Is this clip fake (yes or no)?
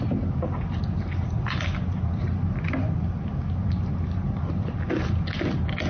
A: no